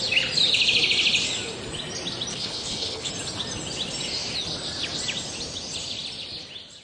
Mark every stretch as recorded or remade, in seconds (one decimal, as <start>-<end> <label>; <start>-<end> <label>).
0.0-2.3 recorded; 2.3-3.1 remade; 3.1-6.8 recorded